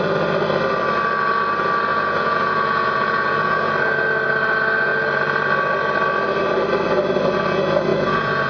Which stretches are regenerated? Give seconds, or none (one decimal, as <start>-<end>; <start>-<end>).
1.9-3.7; 7.9-8.5